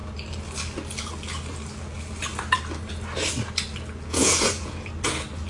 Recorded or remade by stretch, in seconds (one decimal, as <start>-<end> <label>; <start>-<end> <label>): 0.0-4.1 recorded; 4.1-4.9 remade; 4.9-5.5 recorded